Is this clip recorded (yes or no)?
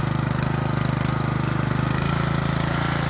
yes